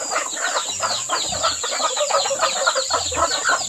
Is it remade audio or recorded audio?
recorded